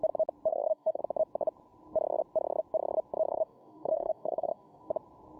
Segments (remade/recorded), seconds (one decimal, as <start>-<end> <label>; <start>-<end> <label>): 0.0-0.5 recorded; 0.5-1.0 remade; 1.0-3.3 recorded; 3.3-4.9 remade; 4.9-5.4 recorded